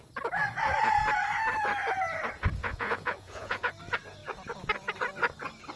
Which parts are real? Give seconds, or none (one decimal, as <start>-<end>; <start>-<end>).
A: 0.0-2.6; 3.7-5.8